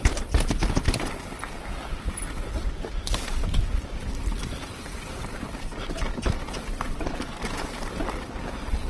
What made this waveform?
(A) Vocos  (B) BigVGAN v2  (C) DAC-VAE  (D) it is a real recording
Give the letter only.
B